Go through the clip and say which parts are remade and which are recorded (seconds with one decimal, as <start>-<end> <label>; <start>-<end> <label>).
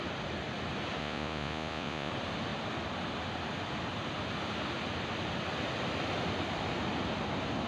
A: 0.0-1.0 recorded; 1.0-2.1 remade; 2.1-7.7 recorded